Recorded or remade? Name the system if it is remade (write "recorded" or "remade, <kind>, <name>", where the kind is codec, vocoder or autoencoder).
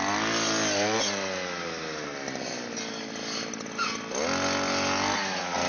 recorded